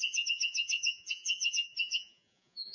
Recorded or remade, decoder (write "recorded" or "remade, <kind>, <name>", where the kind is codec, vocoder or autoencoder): remade, vocoder, Vocos